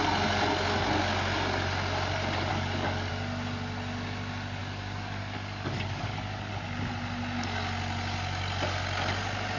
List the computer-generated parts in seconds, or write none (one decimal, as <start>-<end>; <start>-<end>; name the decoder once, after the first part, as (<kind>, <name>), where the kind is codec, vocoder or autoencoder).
2.5-3.1 (codec, DAC); 4.6-6.5